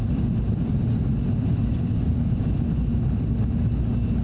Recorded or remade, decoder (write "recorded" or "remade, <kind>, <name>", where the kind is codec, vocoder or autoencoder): recorded